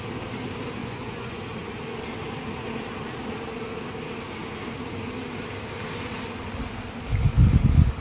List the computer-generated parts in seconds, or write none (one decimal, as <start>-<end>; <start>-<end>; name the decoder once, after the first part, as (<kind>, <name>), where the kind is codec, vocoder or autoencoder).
0.8-1.4 (vocoder, Vocos)